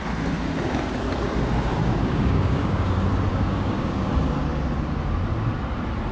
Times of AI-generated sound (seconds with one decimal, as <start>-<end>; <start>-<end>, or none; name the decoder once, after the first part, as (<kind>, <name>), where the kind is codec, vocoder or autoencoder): 1.8-2.9 (codec, DAC); 3.3-4.1